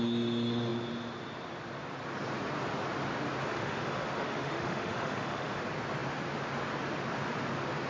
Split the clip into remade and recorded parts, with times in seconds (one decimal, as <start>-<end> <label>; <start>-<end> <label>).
0.0-3.5 recorded; 3.5-5.6 remade; 5.6-7.9 recorded